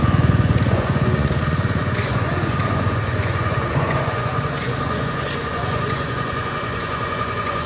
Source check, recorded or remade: remade